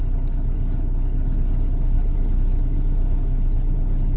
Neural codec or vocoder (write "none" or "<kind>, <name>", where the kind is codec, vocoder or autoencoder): codec, HILCodec